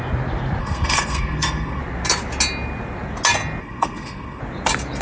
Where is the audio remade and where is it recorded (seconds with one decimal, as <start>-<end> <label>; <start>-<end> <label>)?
0.0-0.6 recorded; 0.6-1.8 remade; 1.8-3.6 recorded; 3.6-4.4 remade; 4.4-5.0 recorded